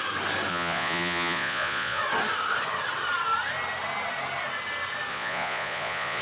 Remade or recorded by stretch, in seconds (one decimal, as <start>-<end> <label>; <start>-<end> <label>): 0.0-0.5 recorded; 0.5-2.0 remade; 2.0-5.1 recorded; 5.1-6.2 remade